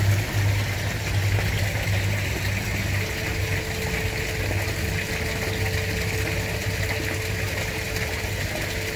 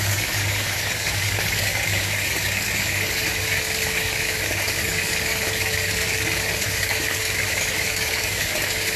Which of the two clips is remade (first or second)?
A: second